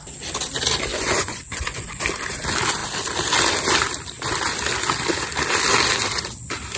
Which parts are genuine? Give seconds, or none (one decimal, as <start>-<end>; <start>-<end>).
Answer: 0.0-0.9; 2.0-6.8

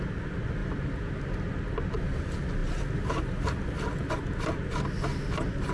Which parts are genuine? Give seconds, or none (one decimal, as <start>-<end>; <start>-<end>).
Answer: 0.0-0.6; 2.2-2.6; 4.1-5.7